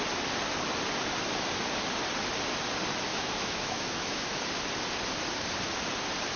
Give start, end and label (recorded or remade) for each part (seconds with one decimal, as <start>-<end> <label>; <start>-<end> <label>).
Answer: 0.0-3.1 recorded; 3.1-4.4 remade; 4.4-6.4 recorded